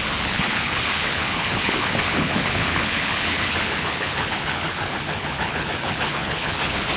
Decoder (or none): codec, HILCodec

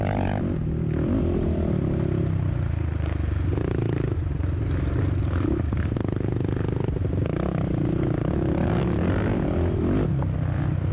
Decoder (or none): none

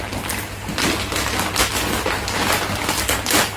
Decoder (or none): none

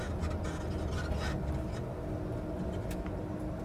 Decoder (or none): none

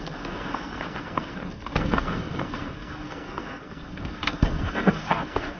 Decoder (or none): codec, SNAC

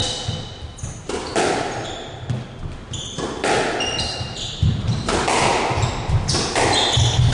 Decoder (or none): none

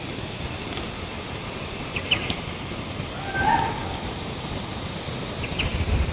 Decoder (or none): none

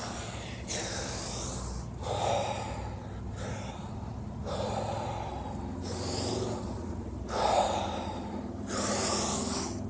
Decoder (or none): none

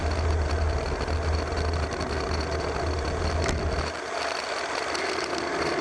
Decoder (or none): none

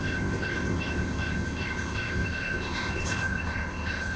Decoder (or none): codec, ZipCodec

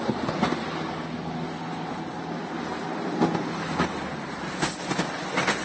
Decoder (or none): none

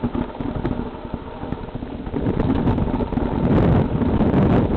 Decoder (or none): none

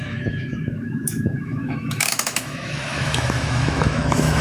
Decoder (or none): autoencoder, DAC-VAE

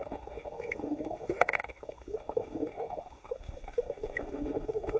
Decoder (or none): autoencoder, DAC-VAE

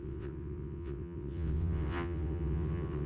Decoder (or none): vocoder, WaveNeXt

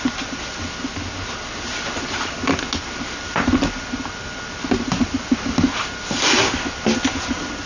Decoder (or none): none